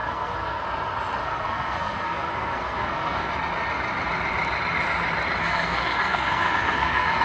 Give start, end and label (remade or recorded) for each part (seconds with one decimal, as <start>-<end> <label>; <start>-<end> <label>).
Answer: 0.0-0.6 remade; 0.6-1.2 recorded; 1.2-3.3 remade; 3.3-5.4 recorded; 5.4-7.2 remade

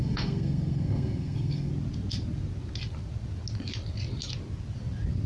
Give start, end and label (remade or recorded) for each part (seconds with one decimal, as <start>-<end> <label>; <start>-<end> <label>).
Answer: 0.0-1.7 remade; 1.7-5.3 recorded

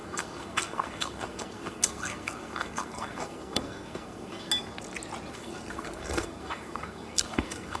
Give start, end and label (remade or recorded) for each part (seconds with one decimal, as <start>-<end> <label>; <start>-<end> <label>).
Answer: 0.0-4.5 remade; 4.5-5.3 recorded; 5.3-7.8 remade

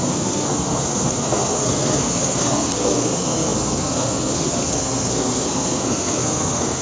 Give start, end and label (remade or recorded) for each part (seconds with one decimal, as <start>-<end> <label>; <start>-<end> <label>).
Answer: 0.0-6.8 remade

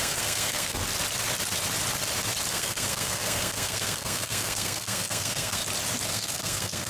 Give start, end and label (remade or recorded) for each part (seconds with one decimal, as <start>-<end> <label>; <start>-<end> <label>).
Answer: 0.0-0.8 remade; 0.8-2.5 recorded; 2.5-5.6 remade; 5.6-6.1 recorded; 6.1-6.9 remade

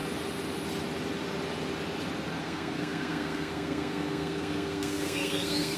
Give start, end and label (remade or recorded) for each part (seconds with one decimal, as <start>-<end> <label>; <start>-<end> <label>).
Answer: 0.0-2.4 recorded; 2.4-5.8 remade

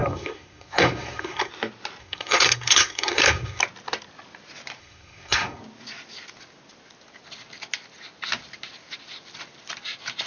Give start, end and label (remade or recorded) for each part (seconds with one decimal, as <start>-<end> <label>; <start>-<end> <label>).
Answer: 0.0-1.5 remade; 1.5-2.0 recorded; 2.0-3.6 remade; 3.6-4.8 recorded; 4.8-5.6 remade; 5.6-10.3 recorded